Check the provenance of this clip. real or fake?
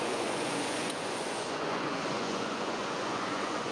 fake